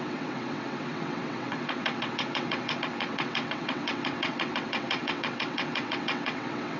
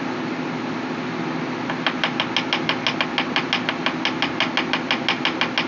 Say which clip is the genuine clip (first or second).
second